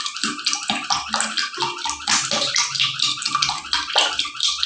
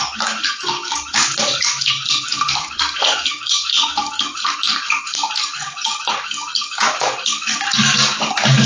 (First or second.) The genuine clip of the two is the first